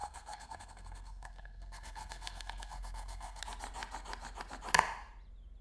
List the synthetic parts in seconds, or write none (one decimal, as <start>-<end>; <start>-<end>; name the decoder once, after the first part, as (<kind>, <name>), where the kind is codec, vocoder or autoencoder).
0.0-3.4 (codec, SNAC)